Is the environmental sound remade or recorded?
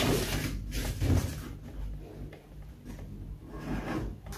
recorded